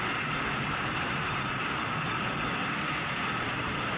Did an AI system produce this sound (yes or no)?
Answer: no